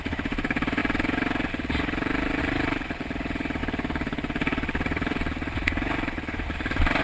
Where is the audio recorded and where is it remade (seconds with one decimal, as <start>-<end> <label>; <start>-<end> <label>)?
0.0-7.0 remade